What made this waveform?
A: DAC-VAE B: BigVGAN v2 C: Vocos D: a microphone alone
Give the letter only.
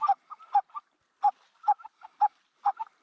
D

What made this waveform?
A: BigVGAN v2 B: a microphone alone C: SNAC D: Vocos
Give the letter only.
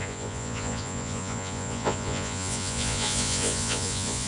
D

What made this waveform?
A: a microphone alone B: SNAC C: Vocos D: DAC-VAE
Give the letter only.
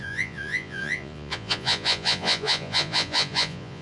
C